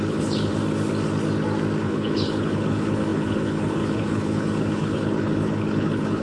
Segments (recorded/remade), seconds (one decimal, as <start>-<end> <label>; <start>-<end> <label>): 0.0-0.5 remade; 0.5-1.8 recorded; 1.8-6.2 remade